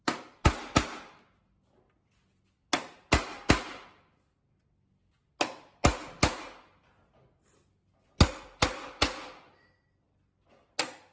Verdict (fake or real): real